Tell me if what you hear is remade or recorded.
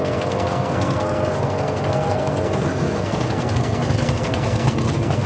remade